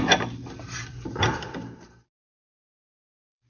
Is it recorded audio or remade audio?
remade